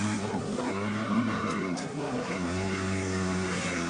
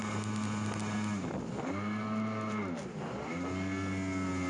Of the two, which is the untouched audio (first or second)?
second